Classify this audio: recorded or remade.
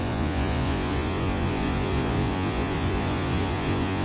remade